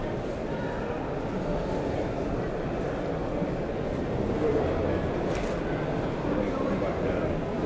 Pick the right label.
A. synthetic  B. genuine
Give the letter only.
B